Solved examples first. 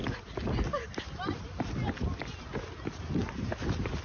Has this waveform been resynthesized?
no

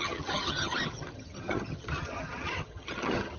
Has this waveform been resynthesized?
yes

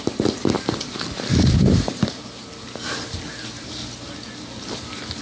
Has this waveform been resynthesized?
no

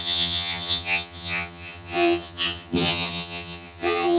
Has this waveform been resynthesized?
yes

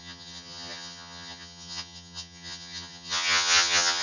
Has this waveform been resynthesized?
yes